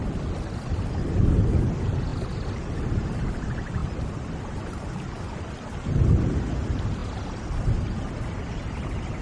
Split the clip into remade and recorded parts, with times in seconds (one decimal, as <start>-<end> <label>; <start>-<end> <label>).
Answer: 0.0-9.2 recorded